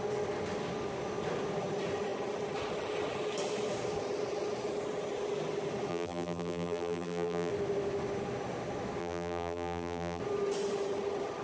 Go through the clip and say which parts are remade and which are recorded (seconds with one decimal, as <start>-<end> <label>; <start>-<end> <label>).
0.0-5.9 recorded; 5.9-7.5 remade; 7.5-9.0 recorded; 9.0-10.2 remade; 10.2-11.4 recorded